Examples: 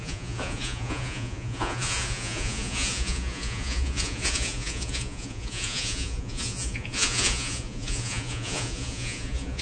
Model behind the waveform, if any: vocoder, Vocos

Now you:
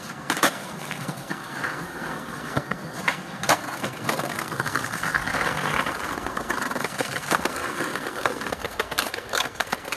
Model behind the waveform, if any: codec, SNAC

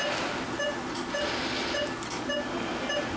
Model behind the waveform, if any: none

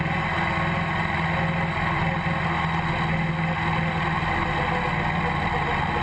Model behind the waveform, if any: none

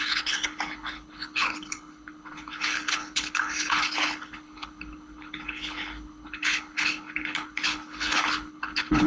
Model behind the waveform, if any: codec, HILCodec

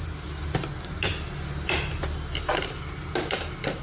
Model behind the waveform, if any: none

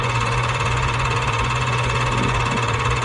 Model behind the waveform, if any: vocoder, Vocos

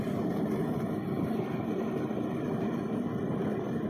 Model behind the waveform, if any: vocoder, BigVGAN v2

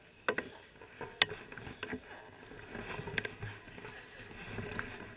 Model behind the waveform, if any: none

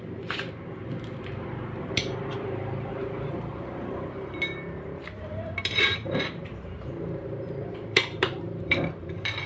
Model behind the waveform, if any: vocoder, BigVGAN v2